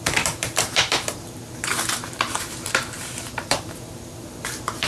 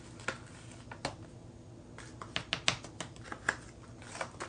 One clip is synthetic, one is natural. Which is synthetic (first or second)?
first